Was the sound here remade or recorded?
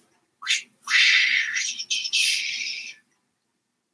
recorded